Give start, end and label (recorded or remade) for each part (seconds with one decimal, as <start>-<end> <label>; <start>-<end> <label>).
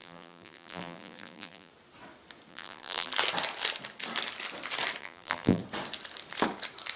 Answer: 0.0-1.7 remade; 1.7-2.5 recorded; 2.5-3.1 remade; 3.1-5.0 recorded; 5.0-5.6 remade; 5.6-7.0 recorded